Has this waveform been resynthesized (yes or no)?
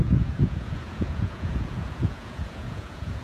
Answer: yes